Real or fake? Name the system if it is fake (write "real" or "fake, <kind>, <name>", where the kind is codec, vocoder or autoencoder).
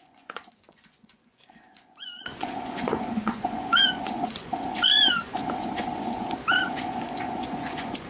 fake, vocoder, Vocos